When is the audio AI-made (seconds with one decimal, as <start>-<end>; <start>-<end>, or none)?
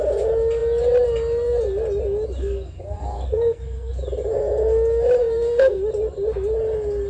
2.4-3.9; 5.2-5.8